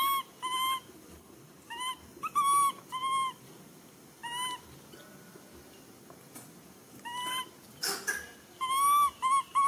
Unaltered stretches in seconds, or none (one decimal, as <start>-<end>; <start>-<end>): 0.0-9.7